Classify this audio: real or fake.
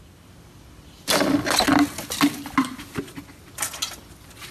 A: real